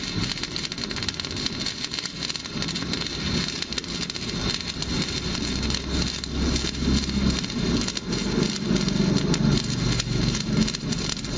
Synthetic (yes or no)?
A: no